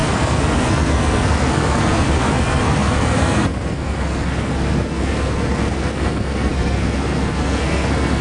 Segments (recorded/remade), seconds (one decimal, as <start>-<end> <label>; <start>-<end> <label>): 0.0-8.2 remade